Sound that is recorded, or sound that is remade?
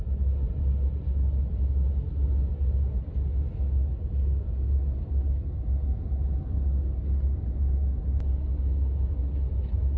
recorded